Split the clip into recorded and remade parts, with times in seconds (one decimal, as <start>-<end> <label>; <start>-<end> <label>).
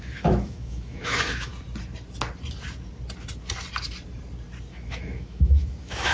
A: 0.0-1.5 remade; 1.5-4.7 recorded; 4.7-6.1 remade